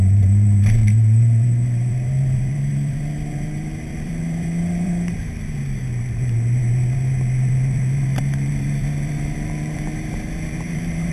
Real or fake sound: fake